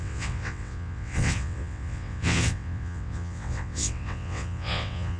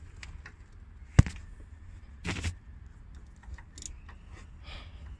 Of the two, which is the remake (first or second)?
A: first